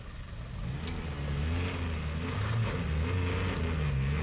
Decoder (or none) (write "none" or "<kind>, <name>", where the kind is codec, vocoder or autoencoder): none